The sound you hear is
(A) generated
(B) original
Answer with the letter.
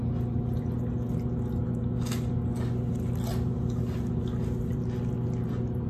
B